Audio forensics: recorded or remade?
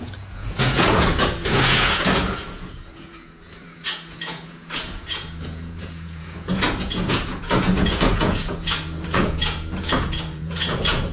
remade